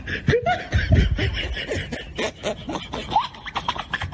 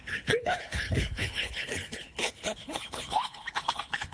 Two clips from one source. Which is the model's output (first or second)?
second